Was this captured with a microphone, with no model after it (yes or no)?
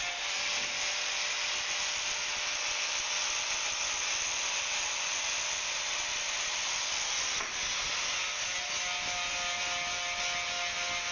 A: yes